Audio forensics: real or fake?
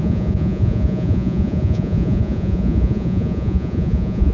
fake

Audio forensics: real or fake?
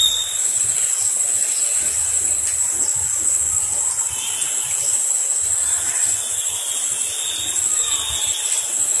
real